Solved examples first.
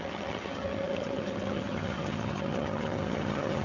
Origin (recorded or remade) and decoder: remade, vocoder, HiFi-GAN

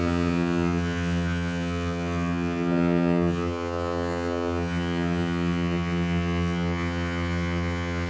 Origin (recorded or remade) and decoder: remade, vocoder, HiFi-GAN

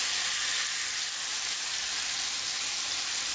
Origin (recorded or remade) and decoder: recorded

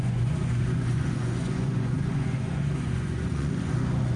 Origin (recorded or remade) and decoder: remade, vocoder, Vocos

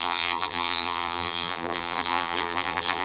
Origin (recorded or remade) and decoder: remade, vocoder, BigVGAN v2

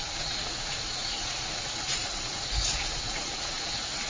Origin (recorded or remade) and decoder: remade, vocoder, Vocos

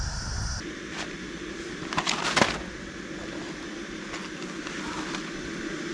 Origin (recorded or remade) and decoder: recorded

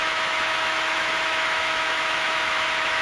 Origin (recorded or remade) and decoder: remade, autoencoder, DAC-VAE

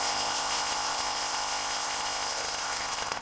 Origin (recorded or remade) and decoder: remade, codec, ZipCodec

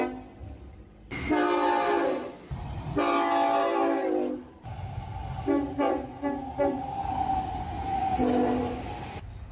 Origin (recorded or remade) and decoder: recorded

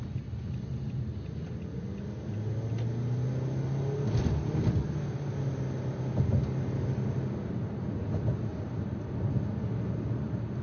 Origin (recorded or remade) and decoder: recorded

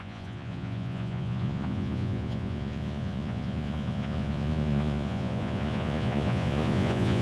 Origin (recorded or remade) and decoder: remade, vocoder, Vocos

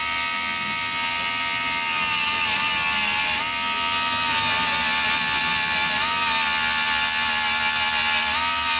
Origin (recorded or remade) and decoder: recorded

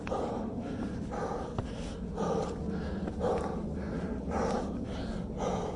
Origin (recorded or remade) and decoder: recorded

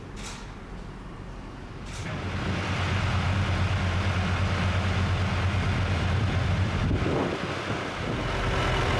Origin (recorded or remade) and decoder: recorded